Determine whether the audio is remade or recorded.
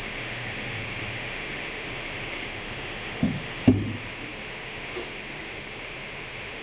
remade